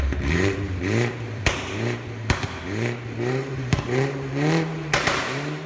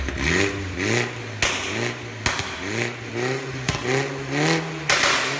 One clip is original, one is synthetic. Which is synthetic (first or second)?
first